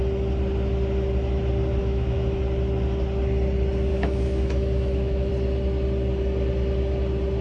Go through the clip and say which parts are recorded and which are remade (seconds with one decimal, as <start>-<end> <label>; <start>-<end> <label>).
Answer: 0.0-1.8 recorded; 1.8-2.4 remade; 2.4-3.9 recorded; 3.9-5.3 remade; 5.3-7.4 recorded